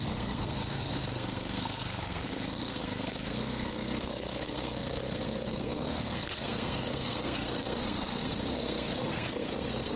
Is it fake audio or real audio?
fake